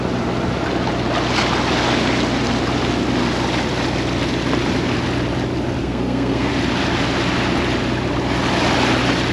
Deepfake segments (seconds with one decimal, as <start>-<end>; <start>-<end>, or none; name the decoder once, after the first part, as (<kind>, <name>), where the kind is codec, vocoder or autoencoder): 5.8-6.5 (codec, SNAC)